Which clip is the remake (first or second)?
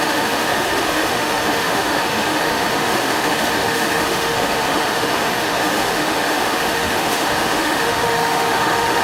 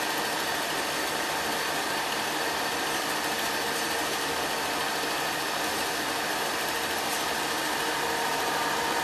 first